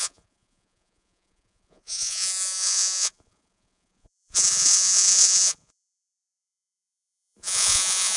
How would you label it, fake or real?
fake